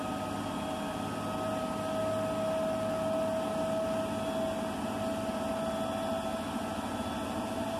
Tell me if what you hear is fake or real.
real